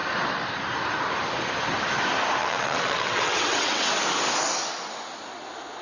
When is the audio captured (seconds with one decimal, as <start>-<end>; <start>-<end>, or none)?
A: 0.0-2.4; 3.9-5.8